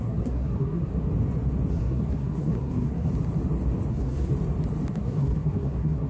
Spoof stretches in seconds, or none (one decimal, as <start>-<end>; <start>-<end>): 0.0-0.9; 1.7-3.1; 3.9-4.3; 4.9-6.1